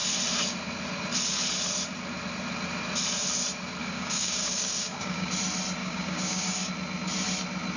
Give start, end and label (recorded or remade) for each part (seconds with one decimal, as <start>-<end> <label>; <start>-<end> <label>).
0.0-3.8 recorded; 3.8-5.3 remade; 5.3-5.8 recorded; 5.8-6.7 remade; 6.7-7.8 recorded